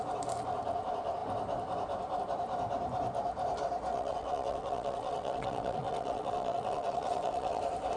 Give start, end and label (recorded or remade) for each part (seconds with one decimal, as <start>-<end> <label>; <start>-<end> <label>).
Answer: 0.0-3.9 recorded; 3.9-7.6 remade; 7.6-8.0 recorded